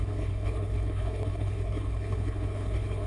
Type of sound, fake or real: fake